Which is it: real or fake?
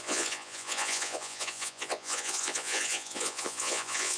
fake